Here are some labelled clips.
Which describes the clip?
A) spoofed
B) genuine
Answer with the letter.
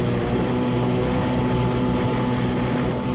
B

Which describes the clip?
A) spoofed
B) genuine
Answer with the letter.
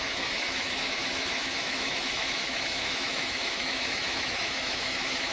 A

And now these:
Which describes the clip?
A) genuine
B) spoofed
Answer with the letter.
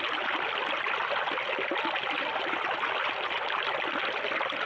A